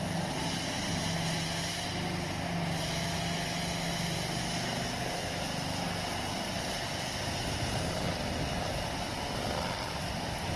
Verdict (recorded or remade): recorded